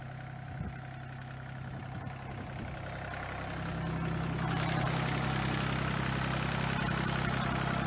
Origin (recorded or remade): recorded